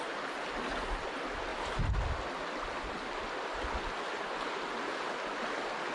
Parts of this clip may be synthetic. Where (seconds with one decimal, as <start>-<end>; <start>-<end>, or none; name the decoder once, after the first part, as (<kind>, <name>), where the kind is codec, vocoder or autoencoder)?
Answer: none